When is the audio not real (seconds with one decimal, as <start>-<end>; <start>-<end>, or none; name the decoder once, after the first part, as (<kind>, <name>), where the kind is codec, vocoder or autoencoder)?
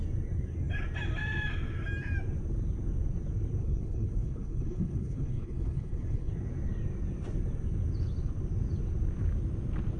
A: 3.6-6.3 (codec, HILCodec)